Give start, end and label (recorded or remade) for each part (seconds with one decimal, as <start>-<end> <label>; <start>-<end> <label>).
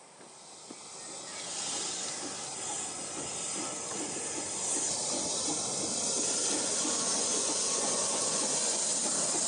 0.0-6.8 recorded; 6.8-8.8 remade; 8.8-9.5 recorded